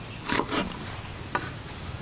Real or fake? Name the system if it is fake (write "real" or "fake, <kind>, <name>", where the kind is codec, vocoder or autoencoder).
real